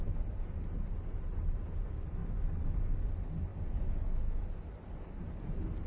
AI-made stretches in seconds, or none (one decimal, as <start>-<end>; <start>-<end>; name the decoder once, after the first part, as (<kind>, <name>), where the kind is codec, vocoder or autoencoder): none